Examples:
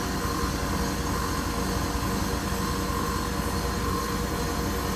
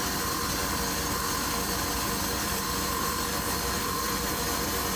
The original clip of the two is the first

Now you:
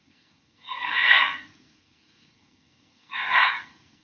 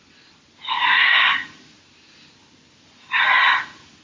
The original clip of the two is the second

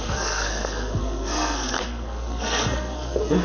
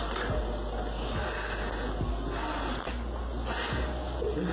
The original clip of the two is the second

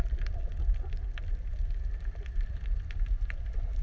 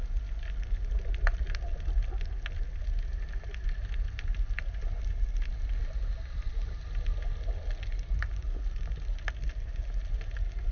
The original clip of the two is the second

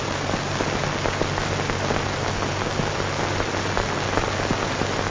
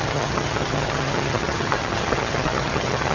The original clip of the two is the first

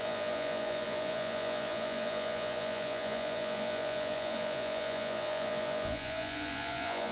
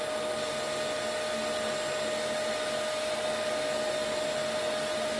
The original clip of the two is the second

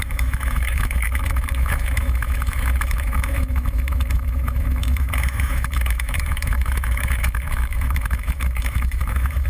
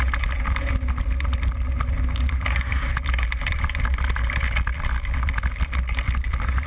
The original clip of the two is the second